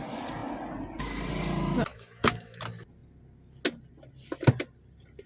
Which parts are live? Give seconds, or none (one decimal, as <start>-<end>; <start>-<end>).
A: 0.0-1.9; 2.6-5.3